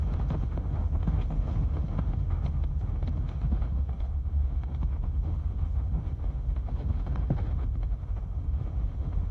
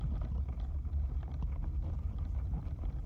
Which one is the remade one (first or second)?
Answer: first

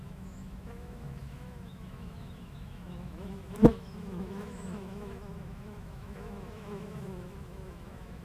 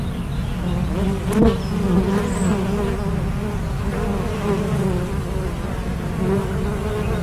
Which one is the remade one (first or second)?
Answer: first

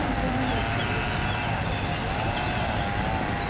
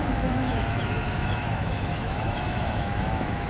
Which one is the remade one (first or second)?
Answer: second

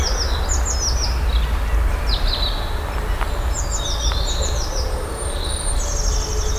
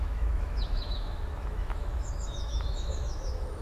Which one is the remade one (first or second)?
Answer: second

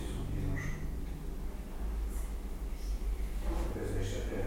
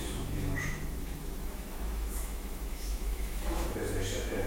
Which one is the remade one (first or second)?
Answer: second